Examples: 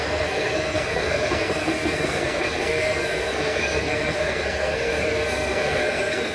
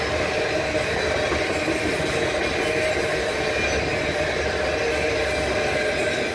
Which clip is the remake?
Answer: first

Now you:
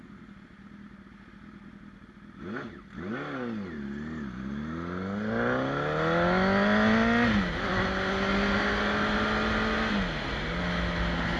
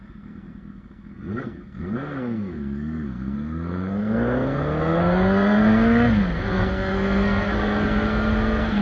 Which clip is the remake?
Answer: second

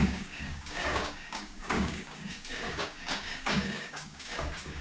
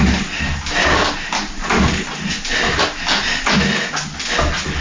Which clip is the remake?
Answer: first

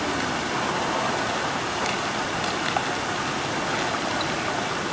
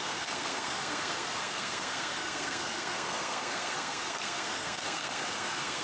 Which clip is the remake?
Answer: second